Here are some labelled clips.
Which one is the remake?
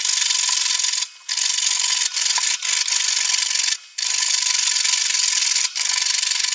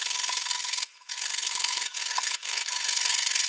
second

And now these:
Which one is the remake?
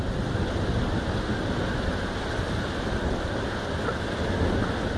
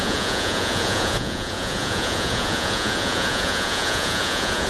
second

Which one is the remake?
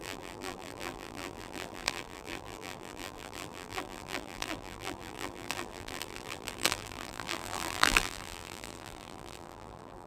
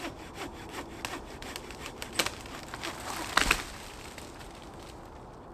first